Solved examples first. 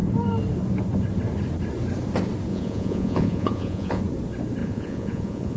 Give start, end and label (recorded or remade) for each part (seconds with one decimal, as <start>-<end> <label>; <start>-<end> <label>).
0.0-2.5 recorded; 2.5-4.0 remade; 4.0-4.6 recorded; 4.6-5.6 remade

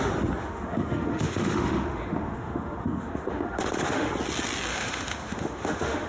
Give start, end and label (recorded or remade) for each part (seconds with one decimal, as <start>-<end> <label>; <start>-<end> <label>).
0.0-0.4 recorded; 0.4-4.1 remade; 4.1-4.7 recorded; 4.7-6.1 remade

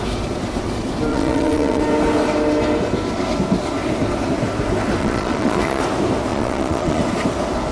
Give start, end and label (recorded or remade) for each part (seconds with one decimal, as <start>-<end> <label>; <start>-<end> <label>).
0.0-1.1 recorded; 1.1-1.8 remade; 1.8-5.0 recorded; 5.0-5.8 remade; 5.8-6.3 recorded; 6.3-7.0 remade; 7.0-7.7 recorded

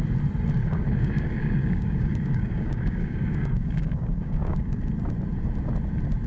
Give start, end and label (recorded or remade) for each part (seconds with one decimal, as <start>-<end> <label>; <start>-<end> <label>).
0.0-1.0 recorded; 1.0-4.8 remade; 4.8-6.3 recorded